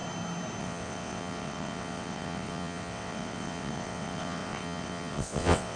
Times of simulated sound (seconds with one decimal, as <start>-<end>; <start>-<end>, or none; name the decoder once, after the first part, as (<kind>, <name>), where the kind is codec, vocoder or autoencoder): 0.6-5.8 (vocoder, WaveNeXt)